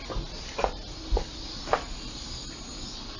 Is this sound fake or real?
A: real